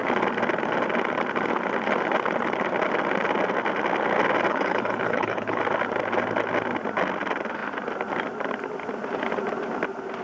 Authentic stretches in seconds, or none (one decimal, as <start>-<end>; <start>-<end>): 0.0-4.5; 5.6-10.2